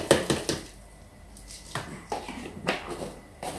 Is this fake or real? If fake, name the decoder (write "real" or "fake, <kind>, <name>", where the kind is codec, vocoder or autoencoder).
real